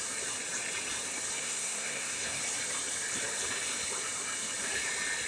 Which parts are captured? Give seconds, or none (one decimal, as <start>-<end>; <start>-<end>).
0.0-1.4; 2.4-5.3